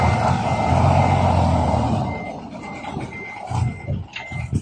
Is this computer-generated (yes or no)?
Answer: no